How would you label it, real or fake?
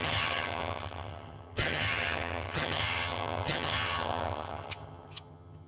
fake